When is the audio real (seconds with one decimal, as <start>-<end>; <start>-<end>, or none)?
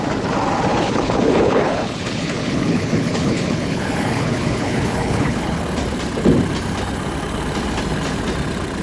0.0-0.7; 5.6-8.8